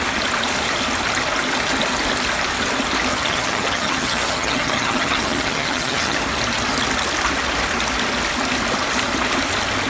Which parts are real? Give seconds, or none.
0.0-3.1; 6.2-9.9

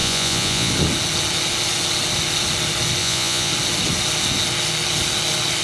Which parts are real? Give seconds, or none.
0.7-3.0; 3.5-5.6

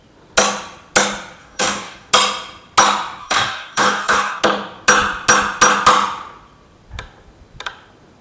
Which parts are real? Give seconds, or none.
0.0-1.4; 2.1-3.2; 4.4-8.2

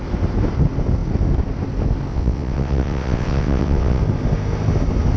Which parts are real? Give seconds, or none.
0.0-2.1; 4.0-5.2

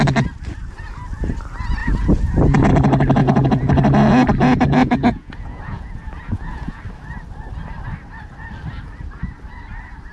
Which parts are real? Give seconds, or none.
0.0-1.8; 2.7-3.2; 3.7-4.8; 6.8-10.1

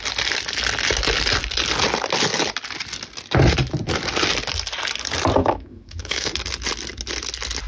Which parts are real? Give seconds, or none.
0.0-5.4; 6.3-7.7

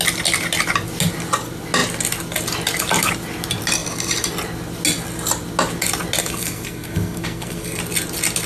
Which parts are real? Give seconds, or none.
0.0-6.2; 7.8-8.5

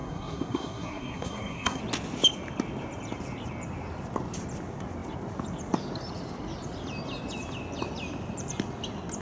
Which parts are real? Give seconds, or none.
1.8-9.2